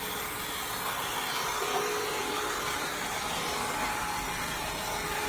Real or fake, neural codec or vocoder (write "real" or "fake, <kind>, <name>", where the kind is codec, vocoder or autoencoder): real